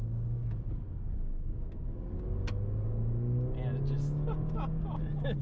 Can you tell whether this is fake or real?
real